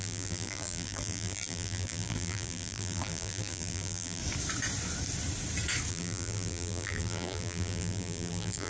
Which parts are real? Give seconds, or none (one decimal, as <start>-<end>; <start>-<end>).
4.2-5.9